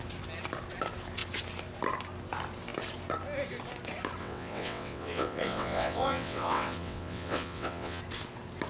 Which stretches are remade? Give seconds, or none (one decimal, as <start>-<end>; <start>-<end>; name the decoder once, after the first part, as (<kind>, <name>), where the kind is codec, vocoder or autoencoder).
4.2-8.0 (vocoder, WaveNeXt)